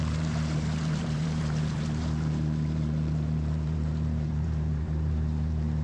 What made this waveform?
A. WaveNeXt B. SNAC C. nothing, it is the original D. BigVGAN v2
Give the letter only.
D